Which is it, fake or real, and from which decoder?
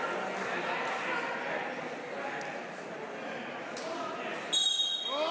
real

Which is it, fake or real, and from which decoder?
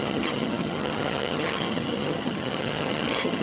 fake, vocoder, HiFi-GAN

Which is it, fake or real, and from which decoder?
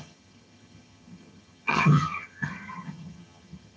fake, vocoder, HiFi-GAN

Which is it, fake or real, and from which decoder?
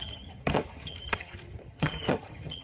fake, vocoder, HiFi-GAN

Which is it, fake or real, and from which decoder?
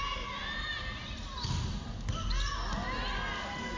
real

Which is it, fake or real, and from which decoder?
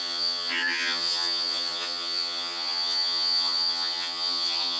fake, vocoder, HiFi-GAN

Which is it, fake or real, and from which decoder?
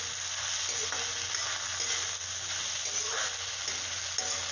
real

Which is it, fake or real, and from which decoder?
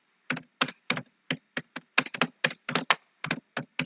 real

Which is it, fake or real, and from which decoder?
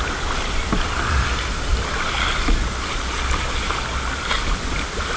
real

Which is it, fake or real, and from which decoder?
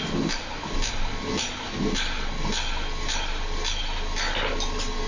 real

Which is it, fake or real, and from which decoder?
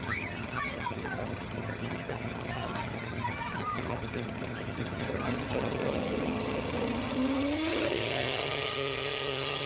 fake, vocoder, HiFi-GAN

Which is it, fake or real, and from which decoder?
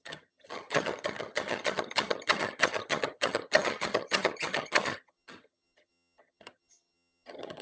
fake, vocoder, HiFi-GAN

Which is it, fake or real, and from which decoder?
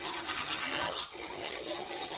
fake, vocoder, HiFi-GAN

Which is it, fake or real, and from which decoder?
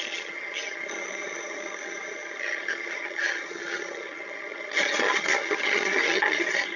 fake, vocoder, HiFi-GAN